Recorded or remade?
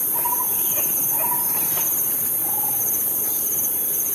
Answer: recorded